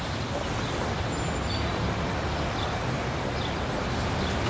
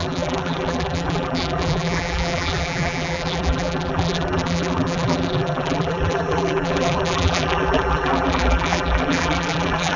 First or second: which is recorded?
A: first